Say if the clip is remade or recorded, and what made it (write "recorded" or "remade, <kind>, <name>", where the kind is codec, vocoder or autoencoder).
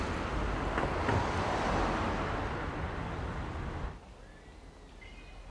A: recorded